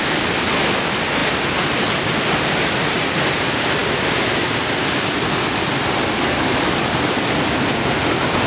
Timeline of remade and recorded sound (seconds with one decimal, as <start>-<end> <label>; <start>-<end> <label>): 0.0-8.5 recorded